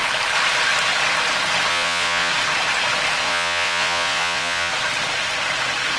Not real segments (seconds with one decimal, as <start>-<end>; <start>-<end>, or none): 1.7-2.3; 3.2-4.7